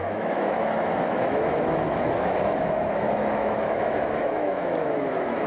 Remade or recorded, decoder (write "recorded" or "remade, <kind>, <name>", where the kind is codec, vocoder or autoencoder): remade, autoencoder, DAC-VAE